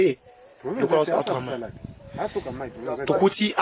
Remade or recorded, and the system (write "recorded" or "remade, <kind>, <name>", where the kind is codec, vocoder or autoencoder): recorded